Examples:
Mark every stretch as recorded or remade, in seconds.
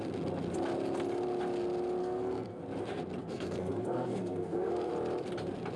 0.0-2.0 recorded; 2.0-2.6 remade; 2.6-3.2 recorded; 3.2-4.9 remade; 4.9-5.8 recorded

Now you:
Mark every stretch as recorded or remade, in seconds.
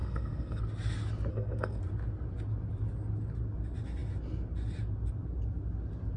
0.0-0.6 remade; 0.6-1.3 recorded; 1.3-1.8 remade; 1.8-6.2 recorded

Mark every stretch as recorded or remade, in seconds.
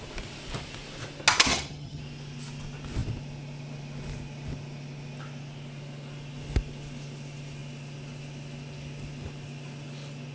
0.0-1.5 recorded; 1.5-2.0 remade; 2.0-10.3 recorded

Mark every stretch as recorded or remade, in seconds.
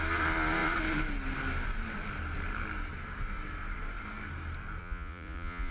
0.0-4.8 recorded; 4.8-5.7 remade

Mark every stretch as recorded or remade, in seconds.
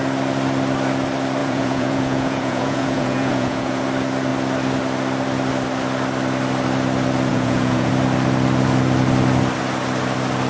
0.0-1.4 recorded; 1.4-3.8 remade; 3.8-7.3 recorded; 7.3-7.9 remade; 7.9-10.5 recorded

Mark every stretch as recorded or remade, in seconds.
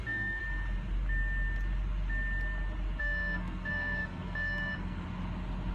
0.0-0.4 remade; 0.4-3.0 recorded; 3.0-5.0 remade; 5.0-5.7 recorded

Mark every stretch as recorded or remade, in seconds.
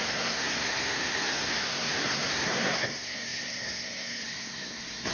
0.0-5.1 remade